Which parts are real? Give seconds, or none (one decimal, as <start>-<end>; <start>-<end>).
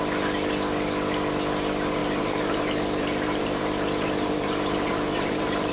0.0-2.0